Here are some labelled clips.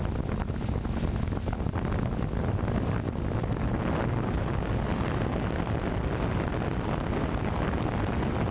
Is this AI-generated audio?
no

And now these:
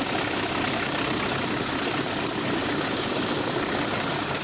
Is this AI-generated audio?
no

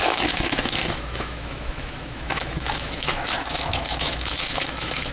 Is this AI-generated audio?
yes